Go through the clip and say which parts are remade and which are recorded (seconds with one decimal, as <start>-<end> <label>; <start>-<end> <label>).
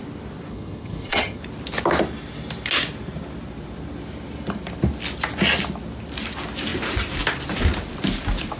0.0-0.5 recorded; 0.5-1.4 remade; 1.4-8.6 recorded